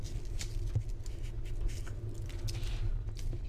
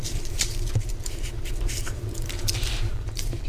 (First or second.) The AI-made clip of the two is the second